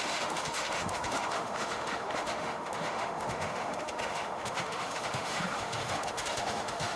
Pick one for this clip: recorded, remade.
remade